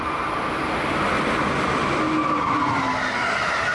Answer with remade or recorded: recorded